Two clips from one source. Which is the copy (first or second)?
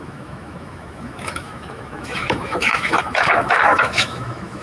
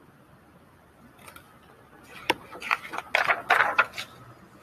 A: first